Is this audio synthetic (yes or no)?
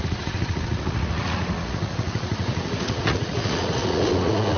yes